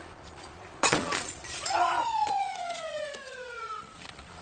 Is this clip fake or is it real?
fake